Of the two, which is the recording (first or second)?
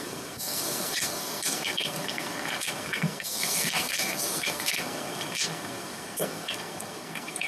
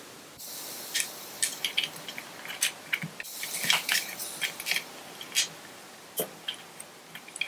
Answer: second